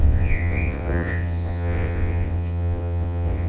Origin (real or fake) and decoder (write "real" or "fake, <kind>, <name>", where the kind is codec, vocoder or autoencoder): fake, vocoder, WaveNeXt